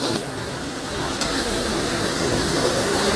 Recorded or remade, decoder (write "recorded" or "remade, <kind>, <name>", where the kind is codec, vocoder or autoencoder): remade, codec, SNAC